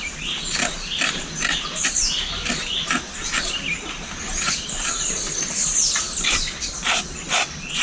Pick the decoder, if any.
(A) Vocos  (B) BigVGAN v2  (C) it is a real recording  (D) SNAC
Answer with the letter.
C